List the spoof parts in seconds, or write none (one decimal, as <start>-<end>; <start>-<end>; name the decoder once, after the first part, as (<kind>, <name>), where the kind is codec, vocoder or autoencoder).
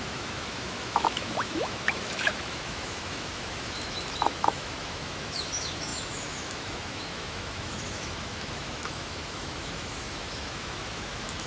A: 0.0-11.5 (autoencoder, DAC-VAE)